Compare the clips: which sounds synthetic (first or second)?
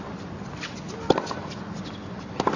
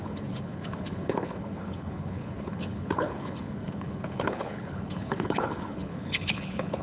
second